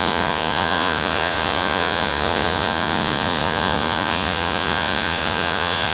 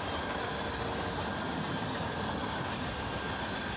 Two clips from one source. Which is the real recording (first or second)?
second